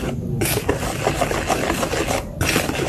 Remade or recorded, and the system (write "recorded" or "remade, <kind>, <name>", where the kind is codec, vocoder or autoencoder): recorded